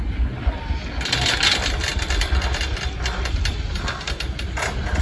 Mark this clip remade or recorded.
recorded